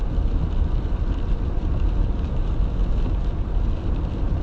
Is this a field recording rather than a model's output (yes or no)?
yes